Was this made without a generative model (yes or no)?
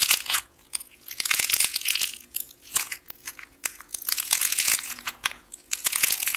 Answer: no